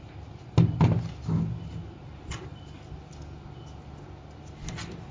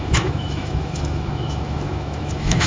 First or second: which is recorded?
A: first